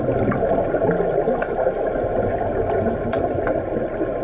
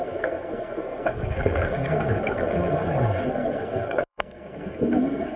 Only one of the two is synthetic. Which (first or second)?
second